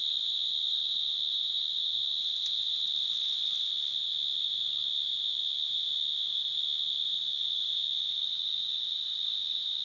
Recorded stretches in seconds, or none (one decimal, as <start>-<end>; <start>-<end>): 0.0-9.8

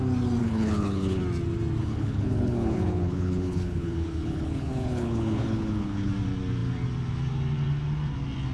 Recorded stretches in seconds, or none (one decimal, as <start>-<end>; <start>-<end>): 0.0-0.4; 1.2-1.8; 6.1-8.5